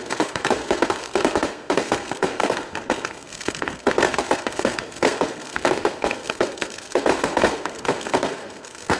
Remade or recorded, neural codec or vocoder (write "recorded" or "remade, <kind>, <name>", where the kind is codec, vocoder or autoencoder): remade, codec, SNAC